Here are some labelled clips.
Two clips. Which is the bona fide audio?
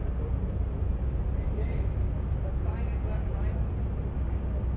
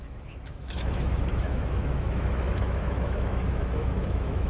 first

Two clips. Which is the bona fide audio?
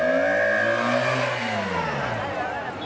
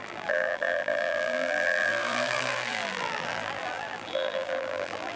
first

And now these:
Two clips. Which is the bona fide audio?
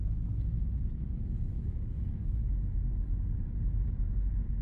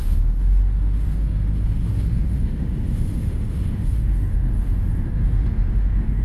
first